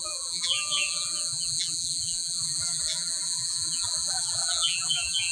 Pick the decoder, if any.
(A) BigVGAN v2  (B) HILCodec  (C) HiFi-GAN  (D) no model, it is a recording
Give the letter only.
A